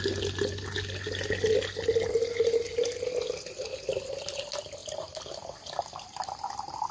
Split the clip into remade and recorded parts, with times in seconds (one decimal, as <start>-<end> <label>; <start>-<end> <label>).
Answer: 0.0-6.9 recorded